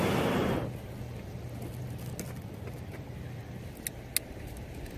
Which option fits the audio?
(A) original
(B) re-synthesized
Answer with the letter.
A